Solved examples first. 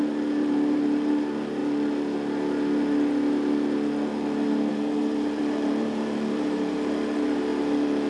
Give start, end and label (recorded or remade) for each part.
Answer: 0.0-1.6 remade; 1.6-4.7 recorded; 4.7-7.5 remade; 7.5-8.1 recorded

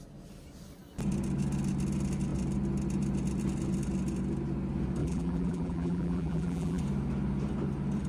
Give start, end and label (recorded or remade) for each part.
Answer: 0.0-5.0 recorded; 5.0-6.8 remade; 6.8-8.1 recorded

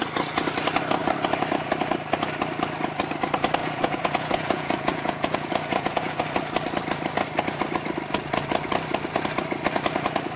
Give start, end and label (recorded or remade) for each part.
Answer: 0.0-3.6 recorded; 3.6-6.2 remade; 6.2-10.4 recorded

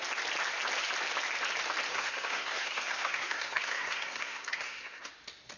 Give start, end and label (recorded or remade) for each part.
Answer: 0.0-1.9 recorded; 1.9-5.1 remade; 5.1-5.6 recorded

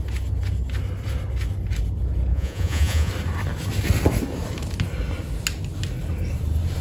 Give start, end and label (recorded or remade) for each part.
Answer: 0.0-2.3 recorded; 2.3-3.1 remade; 3.1-6.8 recorded

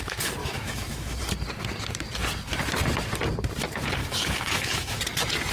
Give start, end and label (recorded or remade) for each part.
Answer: 0.0-0.4 recorded; 0.4-1.2 remade; 1.2-4.0 recorded; 4.0-5.0 remade; 5.0-5.5 recorded

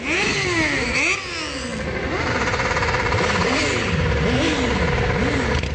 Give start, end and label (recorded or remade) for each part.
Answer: 0.0-5.7 recorded